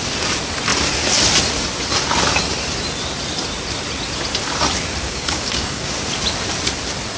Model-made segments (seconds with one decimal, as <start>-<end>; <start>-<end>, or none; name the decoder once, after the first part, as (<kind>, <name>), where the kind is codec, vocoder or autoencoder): 5.0-5.9 (codec, DAC)